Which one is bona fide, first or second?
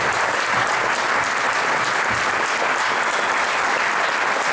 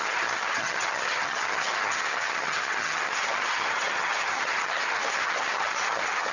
first